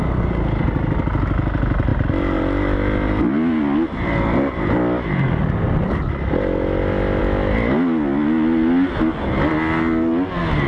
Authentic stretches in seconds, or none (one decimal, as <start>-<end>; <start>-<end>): 0.0-10.7